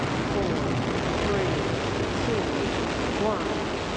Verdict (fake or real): real